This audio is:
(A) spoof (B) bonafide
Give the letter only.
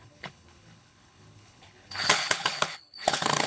A